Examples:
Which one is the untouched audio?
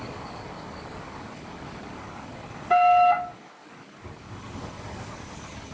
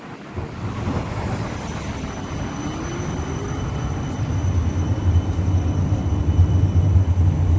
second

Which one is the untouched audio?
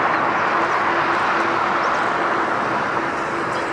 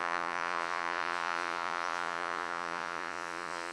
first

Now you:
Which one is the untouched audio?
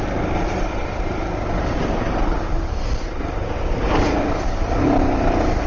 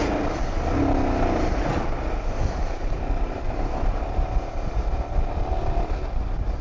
second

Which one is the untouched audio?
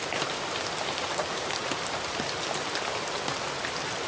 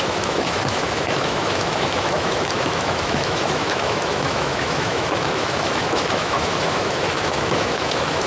first